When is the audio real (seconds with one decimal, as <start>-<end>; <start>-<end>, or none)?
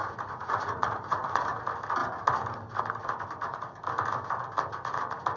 1.6-5.4